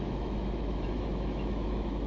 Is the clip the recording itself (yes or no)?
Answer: no